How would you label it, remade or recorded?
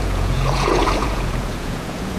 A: remade